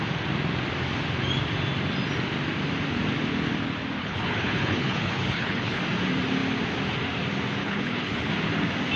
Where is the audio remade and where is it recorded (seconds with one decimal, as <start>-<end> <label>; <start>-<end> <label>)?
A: 0.0-4.0 recorded; 4.0-5.8 remade; 5.8-7.6 recorded; 7.6-8.3 remade; 8.3-9.0 recorded